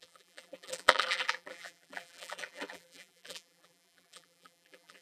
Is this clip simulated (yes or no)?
yes